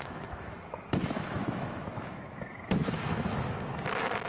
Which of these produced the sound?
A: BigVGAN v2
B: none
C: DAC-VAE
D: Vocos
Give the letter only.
C